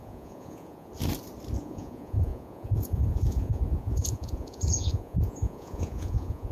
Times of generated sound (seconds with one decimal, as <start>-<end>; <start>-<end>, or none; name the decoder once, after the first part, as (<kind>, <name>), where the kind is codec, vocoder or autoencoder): 0.0-0.9 (vocoder, Vocos); 1.6-6.5